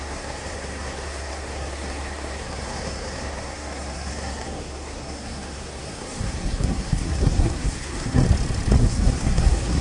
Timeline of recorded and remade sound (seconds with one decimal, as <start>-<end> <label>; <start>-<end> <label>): 0.0-8.2 remade; 8.2-8.8 recorded; 8.8-9.8 remade